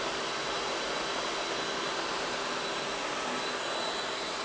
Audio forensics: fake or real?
real